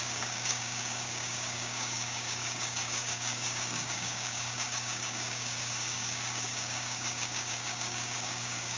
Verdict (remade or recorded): remade